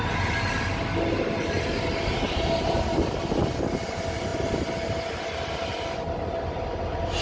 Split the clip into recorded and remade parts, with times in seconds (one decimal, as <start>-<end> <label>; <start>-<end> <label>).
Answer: 0.0-7.2 recorded